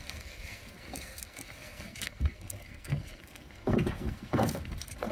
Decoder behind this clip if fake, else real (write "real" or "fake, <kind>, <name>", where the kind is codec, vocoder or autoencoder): fake, codec, SNAC